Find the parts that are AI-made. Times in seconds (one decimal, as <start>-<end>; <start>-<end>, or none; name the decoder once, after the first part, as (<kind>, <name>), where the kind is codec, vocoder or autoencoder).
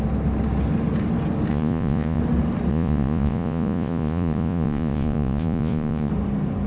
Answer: 1.5-2.2 (vocoder, Vocos); 2.7-6.1